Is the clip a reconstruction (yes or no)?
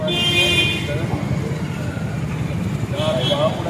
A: no